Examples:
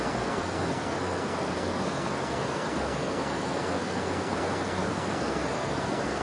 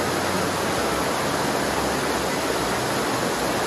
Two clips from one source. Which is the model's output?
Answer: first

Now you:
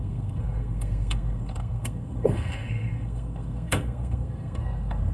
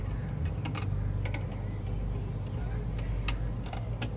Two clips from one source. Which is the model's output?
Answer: first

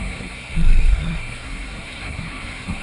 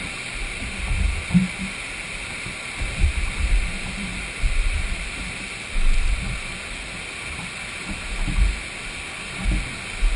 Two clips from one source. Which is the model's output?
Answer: first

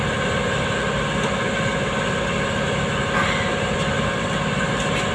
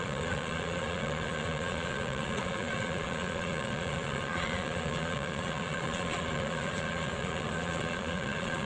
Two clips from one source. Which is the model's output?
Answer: second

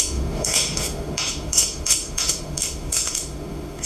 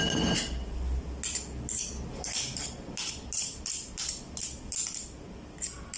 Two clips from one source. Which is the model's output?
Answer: first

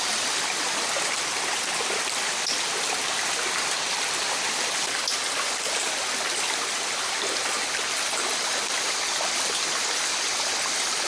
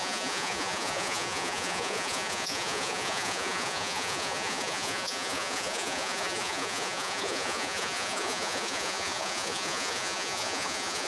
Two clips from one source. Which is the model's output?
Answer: second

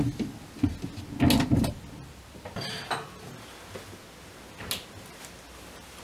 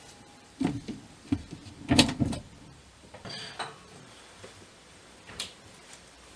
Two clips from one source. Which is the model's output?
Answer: second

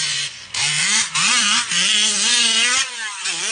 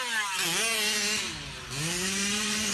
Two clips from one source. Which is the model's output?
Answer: first